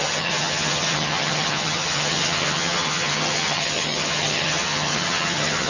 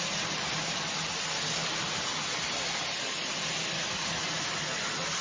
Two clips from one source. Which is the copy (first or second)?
first